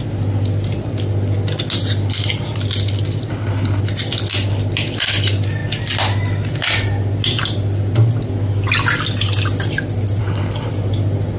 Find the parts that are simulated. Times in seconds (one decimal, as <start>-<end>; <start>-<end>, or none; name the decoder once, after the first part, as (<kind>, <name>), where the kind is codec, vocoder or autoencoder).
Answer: 3.3-3.8 (codec, HILCodec); 10.2-10.7